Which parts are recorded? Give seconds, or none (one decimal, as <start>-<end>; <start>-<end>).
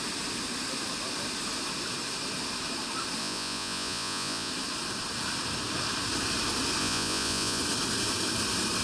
0.0-3.2; 4.5-6.8; 7.6-8.8